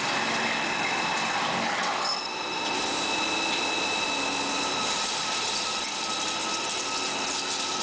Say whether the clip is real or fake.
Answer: real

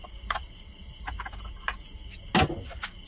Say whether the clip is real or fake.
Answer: real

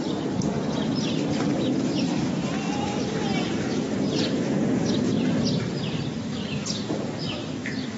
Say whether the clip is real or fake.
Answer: real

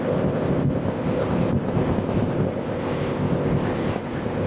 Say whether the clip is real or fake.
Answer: fake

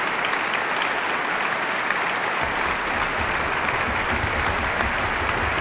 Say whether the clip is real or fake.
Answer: real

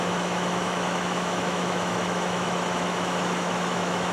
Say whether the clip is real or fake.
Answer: fake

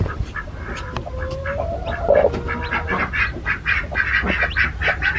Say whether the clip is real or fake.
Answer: real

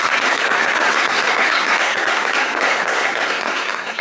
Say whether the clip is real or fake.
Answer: fake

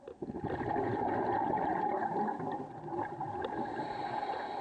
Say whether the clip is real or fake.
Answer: real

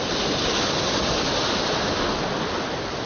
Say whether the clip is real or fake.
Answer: real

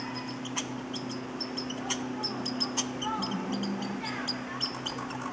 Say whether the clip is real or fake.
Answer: real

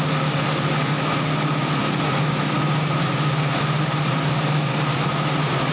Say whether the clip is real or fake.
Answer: real